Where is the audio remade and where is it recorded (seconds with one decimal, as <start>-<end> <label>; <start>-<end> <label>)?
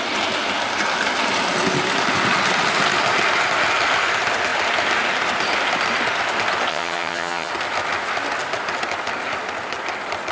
0.0-6.7 recorded; 6.7-7.5 remade; 7.5-10.3 recorded